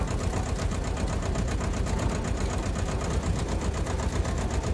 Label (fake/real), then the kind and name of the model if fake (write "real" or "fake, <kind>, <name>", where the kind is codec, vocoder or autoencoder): real